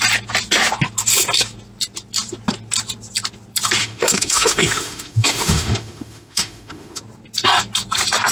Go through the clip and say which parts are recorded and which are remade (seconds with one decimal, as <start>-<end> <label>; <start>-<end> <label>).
0.0-3.8 recorded; 3.8-7.0 remade; 7.0-8.3 recorded